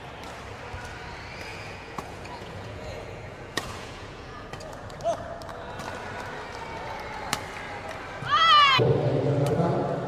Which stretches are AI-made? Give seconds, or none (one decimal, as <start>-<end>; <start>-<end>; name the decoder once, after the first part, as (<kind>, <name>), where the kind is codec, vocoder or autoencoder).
1.5-4.5 (vocoder, Vocos)